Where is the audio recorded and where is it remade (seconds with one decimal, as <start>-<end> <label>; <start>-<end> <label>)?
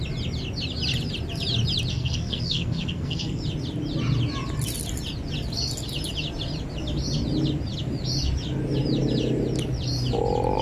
0.0-1.9 recorded; 1.9-3.4 remade; 3.4-10.6 recorded